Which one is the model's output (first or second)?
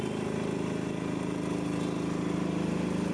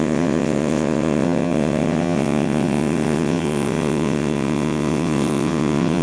second